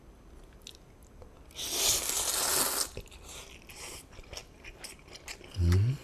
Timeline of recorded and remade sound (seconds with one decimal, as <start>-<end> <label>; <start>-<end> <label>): 0.0-6.0 recorded